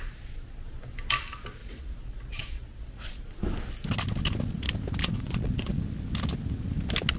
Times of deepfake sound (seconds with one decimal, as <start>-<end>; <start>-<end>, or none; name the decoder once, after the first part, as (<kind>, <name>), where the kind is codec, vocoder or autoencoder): 1.6-3.2 (vocoder, Vocos); 5.0-5.8